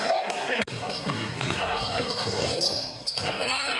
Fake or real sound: fake